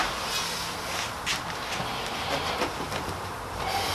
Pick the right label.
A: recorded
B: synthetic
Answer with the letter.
A